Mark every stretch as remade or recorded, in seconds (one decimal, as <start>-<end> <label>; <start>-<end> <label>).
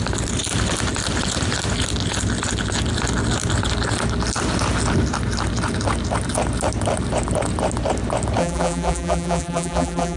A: 0.0-8.4 recorded; 8.4-10.2 remade